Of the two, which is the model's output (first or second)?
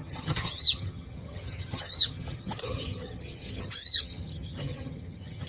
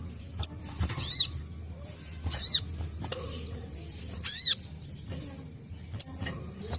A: first